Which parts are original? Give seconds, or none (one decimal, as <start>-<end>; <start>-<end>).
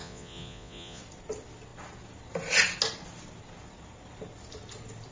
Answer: 1.0-5.1